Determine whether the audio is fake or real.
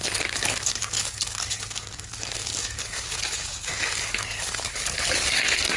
fake